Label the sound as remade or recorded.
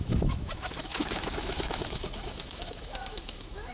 remade